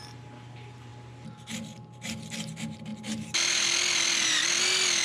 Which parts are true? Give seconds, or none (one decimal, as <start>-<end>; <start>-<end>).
0.0-5.0